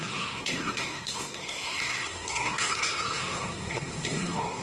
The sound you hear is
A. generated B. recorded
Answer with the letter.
A